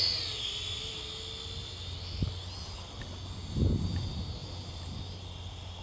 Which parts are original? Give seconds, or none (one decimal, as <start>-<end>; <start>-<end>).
0.0-5.8